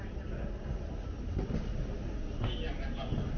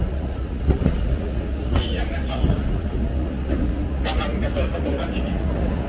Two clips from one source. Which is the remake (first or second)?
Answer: second